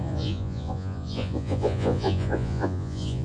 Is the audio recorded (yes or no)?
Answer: no